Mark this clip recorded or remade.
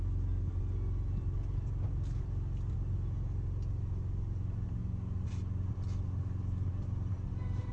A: recorded